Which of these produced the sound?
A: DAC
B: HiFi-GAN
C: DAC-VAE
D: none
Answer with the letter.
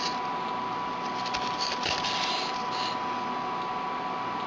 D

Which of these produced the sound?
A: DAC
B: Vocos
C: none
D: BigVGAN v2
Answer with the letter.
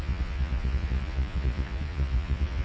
B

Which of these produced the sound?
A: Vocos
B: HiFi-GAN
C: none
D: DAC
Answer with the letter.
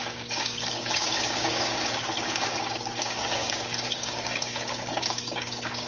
D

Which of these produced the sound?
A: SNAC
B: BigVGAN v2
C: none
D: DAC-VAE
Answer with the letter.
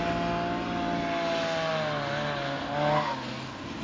C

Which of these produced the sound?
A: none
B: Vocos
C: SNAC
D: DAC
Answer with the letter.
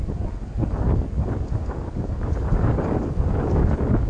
D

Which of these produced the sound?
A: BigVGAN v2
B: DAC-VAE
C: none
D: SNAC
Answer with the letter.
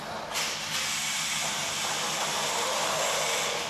A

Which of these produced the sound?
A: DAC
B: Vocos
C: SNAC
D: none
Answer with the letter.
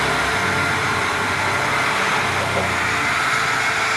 D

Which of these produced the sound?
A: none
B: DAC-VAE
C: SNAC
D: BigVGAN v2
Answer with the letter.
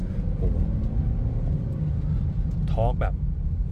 A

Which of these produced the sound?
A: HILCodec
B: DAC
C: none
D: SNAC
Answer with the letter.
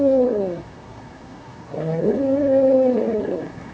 D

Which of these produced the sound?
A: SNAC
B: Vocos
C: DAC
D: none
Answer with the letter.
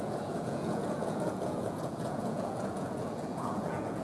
B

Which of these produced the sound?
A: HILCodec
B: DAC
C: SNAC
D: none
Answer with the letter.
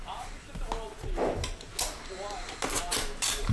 D